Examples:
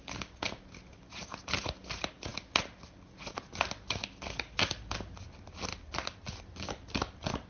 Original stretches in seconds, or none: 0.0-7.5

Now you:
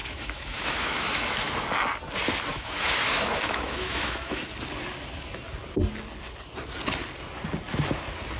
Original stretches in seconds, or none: 1.5-2.5; 4.4-8.4

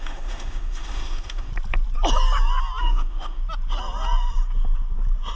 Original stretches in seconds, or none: 1.5-2.8; 3.4-5.4